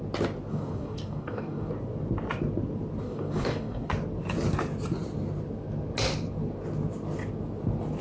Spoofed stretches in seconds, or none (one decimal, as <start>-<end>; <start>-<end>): 0.5-1.7; 3.0-3.9